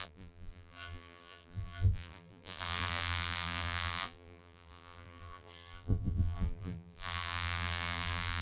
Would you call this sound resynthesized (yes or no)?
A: yes